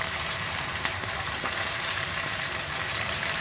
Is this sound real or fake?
fake